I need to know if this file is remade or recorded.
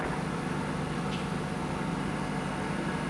recorded